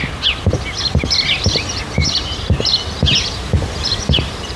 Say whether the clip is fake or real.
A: real